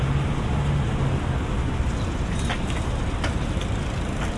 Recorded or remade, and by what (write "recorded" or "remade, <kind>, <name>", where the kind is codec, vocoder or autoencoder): recorded